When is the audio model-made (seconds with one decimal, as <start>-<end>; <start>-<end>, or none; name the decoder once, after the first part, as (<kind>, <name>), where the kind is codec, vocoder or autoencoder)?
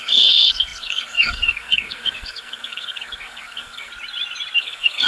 0.0-3.9 (codec, SNAC); 4.6-5.1